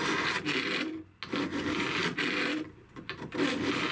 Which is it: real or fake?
real